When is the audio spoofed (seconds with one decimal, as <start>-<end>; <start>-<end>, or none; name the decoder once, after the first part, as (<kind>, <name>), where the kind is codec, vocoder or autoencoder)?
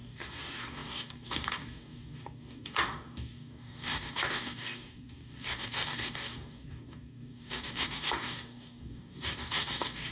0.0-10.1 (codec, DAC)